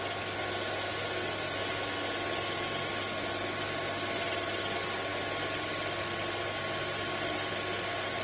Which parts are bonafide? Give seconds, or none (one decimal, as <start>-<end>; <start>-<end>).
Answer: 0.0-8.2